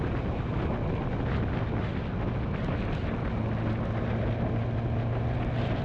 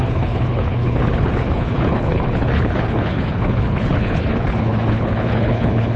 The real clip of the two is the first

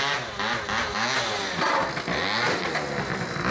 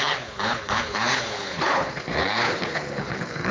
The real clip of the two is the first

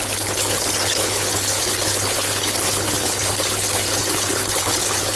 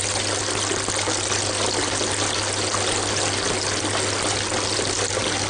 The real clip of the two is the second